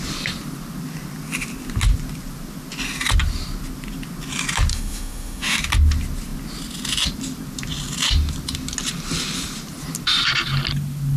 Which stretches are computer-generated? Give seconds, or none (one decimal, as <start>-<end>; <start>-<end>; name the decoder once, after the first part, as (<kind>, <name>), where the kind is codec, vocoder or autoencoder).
4.7-5.6 (autoencoder, DAC-VAE)